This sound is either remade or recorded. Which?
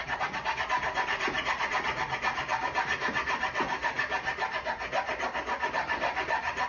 recorded